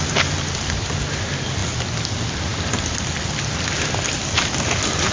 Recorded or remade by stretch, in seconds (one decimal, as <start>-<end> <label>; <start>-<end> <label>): 0.0-5.1 recorded